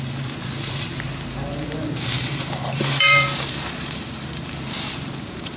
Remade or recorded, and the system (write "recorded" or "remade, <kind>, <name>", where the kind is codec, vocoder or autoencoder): remade, vocoder, BigVGAN v2